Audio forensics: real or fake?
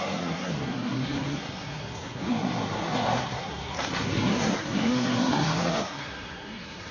fake